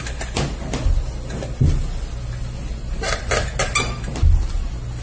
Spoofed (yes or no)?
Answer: no